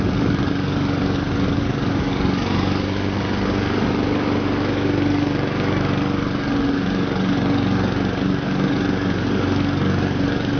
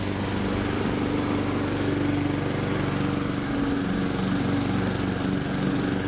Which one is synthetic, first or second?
first